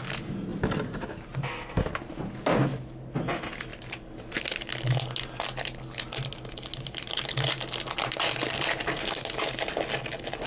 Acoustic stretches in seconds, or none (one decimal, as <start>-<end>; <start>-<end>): 0.0-10.5